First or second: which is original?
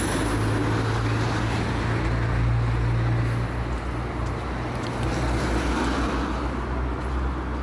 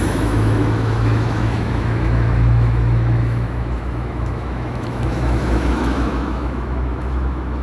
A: first